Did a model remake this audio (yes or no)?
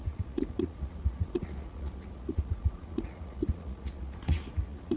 yes